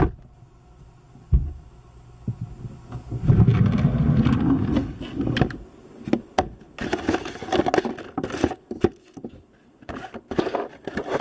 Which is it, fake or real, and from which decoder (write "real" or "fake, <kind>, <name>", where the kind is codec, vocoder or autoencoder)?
real